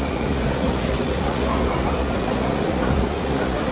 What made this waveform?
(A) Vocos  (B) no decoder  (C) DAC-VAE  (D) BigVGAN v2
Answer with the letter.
A